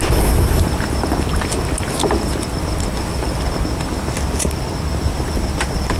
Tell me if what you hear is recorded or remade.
recorded